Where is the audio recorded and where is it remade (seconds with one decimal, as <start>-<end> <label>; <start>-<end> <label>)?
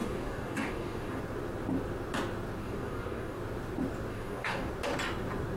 0.0-1.2 remade; 1.2-2.6 recorded; 2.6-3.4 remade; 3.4-4.1 recorded; 4.1-4.7 remade; 4.7-5.6 recorded